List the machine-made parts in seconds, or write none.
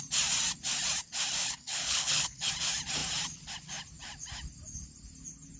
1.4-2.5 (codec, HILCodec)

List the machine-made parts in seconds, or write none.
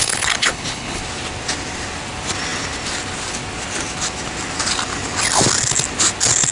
0.0-1.0 (codec, HILCodec)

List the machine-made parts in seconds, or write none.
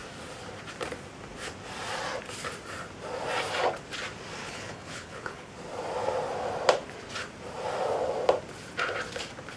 4.4-5.5 (codec, HILCodec)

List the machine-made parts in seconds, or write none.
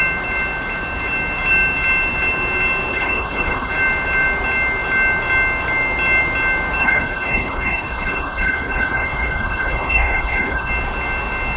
2.9-3.7 (codec, HILCodec); 6.8-10.7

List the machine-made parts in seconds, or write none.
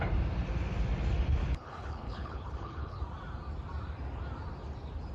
1.4-3.0 (codec, HILCodec)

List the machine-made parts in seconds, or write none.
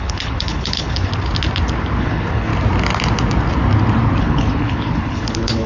0.0-1.1 (codec, HILCodec); 2.0-2.5; 4.2-5.7